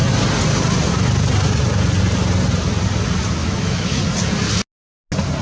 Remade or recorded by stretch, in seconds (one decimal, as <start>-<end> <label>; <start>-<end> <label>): 0.0-3.4 recorded; 3.4-4.0 remade; 4.0-5.4 recorded